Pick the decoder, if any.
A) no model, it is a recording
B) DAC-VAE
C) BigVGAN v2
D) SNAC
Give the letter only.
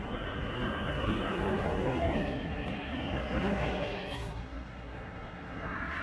D